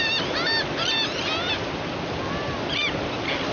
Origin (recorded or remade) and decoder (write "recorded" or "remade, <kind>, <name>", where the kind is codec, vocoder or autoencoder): recorded